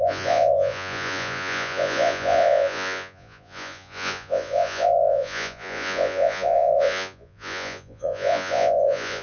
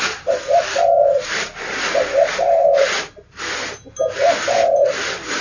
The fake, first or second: first